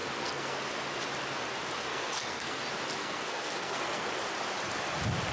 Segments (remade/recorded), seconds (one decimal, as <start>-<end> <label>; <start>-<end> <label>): 0.0-0.6 remade; 0.6-1.9 recorded; 1.9-2.6 remade; 2.6-3.0 recorded; 3.0-4.1 remade; 4.1-5.3 recorded